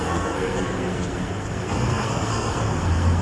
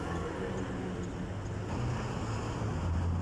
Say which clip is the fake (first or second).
first